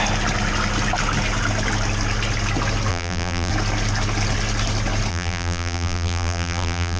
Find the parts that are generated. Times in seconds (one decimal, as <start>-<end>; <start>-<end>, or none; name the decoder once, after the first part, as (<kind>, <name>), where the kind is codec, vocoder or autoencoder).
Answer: 2.9-3.5 (vocoder, BigVGAN v2); 5.1-7.0